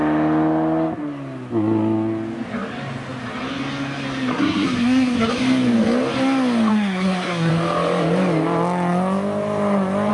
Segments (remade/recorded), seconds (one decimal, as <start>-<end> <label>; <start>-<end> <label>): 0.0-4.3 recorded; 4.3-5.3 remade; 5.3-6.7 recorded; 6.7-7.5 remade; 7.5-10.1 recorded